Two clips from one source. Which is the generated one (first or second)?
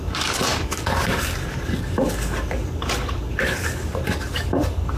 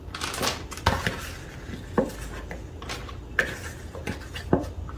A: first